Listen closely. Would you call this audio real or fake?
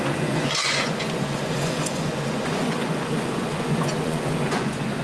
fake